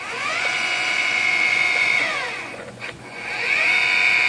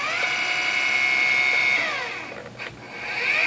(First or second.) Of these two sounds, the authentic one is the second